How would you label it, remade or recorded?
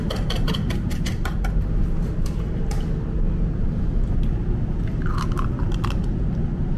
recorded